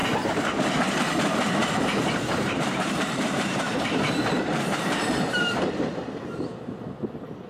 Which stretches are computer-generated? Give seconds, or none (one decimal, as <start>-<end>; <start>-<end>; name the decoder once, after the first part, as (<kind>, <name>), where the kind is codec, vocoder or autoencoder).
1.6-6.0 (vocoder, BigVGAN v2)